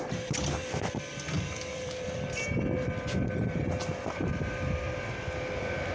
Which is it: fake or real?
fake